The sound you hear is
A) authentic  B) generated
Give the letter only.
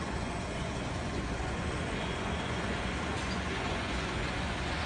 B